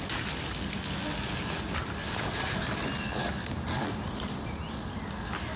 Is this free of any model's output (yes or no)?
yes